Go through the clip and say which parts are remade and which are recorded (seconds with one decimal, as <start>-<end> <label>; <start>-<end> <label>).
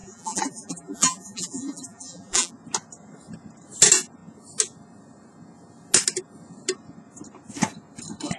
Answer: 0.0-2.5 remade; 2.5-8.4 recorded